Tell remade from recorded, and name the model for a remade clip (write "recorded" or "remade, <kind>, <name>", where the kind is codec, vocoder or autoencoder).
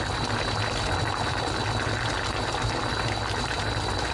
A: recorded